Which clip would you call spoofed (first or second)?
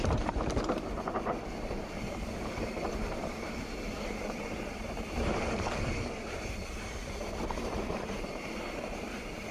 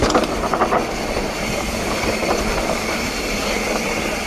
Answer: first